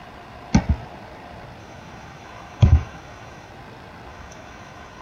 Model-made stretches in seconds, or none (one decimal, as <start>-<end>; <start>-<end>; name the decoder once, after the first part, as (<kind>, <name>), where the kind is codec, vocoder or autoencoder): 1.6-3.5 (autoencoder, DAC-VAE); 4.1-5.0